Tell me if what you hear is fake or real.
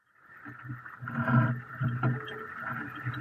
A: real